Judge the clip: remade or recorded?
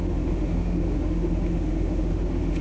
remade